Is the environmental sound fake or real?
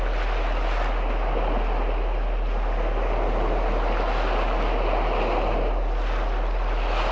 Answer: real